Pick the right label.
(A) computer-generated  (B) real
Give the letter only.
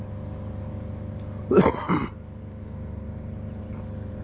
B